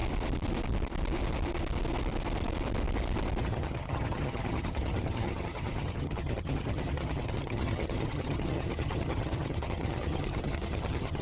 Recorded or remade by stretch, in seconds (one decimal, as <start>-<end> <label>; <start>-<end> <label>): 0.0-3.4 recorded; 3.4-11.2 remade